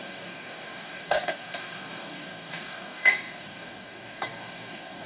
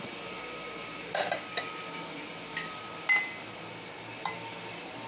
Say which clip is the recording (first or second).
second